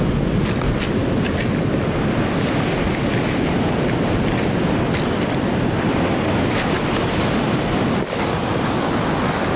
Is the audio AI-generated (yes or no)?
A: no